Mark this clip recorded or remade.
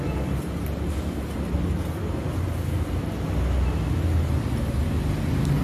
recorded